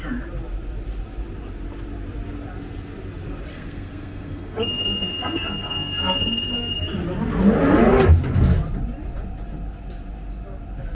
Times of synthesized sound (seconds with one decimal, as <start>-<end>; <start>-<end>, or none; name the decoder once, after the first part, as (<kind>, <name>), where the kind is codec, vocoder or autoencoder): 3.5-6.7 (codec, SNAC)